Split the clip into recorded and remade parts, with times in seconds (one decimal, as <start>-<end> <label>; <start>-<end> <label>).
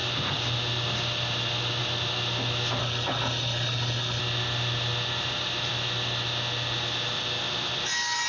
0.0-2.8 recorded; 2.8-4.2 remade; 4.2-8.3 recorded